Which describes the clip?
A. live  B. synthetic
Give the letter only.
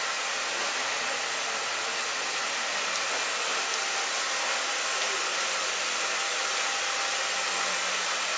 A